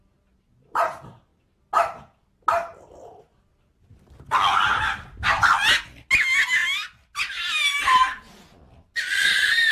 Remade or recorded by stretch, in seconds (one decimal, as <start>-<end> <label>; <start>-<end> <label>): 0.0-9.7 recorded